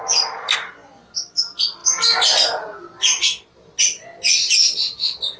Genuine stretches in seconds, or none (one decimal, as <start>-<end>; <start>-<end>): 0.0-5.4